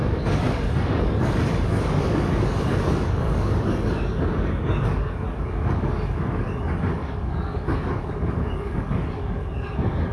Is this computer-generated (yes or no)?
yes